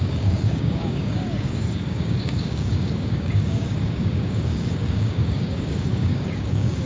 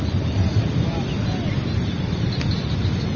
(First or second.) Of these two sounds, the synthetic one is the first